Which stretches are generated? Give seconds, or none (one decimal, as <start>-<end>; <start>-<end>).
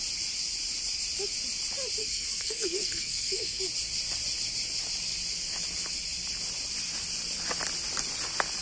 2.0-3.6